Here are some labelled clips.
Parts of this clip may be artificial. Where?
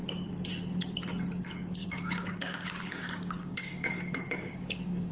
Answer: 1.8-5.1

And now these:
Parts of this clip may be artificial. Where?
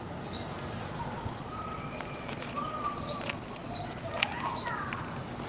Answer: 0.7-4.0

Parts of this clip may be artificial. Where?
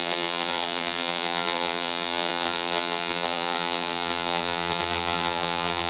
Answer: 0.0-5.9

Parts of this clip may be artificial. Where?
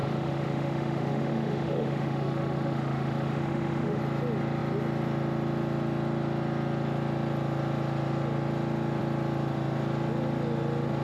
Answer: 0.0-4.0